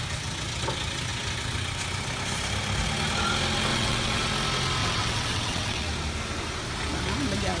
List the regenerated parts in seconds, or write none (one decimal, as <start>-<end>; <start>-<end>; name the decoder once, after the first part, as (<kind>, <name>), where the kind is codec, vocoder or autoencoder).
3.7-4.3 (vocoder, WaveNeXt); 4.8-5.9